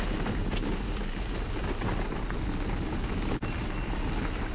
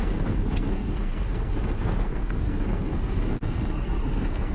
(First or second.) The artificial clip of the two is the second